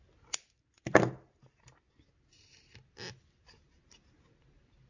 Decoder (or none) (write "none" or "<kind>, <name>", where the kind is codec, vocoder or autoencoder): none